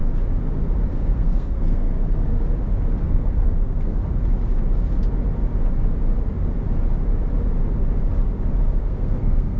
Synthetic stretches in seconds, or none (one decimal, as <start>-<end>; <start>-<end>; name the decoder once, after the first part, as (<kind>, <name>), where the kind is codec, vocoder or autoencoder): 0.9-2.3 (codec, SNAC); 3.0-4.0; 8.8-9.6

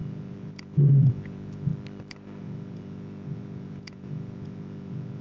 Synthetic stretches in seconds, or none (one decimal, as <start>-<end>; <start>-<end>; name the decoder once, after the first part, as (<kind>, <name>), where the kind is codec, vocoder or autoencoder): 0.0-1.7 (vocoder, Vocos); 2.4-5.2